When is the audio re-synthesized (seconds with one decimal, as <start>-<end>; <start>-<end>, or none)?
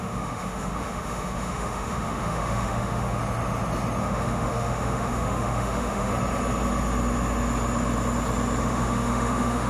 0.0-3.2; 4.0-6.1; 8.6-9.7